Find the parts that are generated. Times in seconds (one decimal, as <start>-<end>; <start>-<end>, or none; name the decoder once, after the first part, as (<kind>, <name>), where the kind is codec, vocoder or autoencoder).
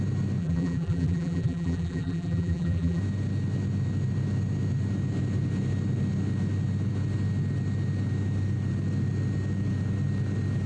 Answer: 0.4-3.0 (vocoder, BigVGAN v2)